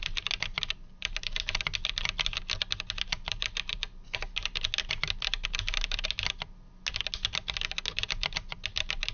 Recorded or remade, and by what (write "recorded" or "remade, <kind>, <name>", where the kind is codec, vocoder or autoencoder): recorded